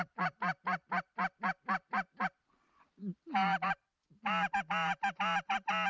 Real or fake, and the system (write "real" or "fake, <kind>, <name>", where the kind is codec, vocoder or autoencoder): real